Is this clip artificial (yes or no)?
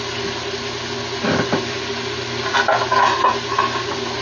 no